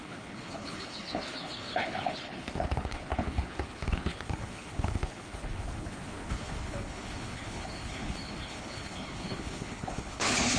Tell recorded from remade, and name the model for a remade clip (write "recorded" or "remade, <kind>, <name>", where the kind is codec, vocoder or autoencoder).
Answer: remade, codec, HILCodec